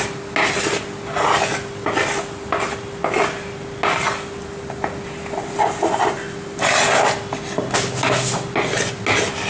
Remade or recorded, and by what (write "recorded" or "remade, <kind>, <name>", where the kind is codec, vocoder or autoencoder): recorded